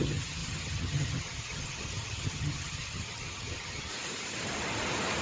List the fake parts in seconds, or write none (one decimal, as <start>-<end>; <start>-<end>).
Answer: 0.0-3.9